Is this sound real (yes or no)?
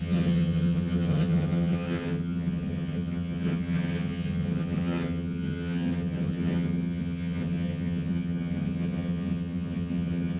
no